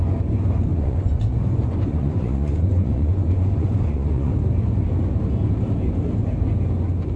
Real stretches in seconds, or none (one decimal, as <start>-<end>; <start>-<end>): 0.0-0.7; 4.3-7.2